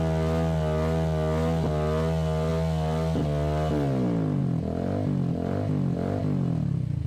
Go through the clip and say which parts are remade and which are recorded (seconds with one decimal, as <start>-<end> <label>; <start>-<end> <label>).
0.0-7.1 recorded

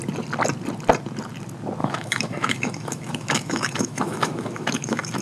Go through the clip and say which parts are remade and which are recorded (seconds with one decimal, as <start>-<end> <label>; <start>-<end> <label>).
0.0-1.8 recorded; 1.8-5.2 remade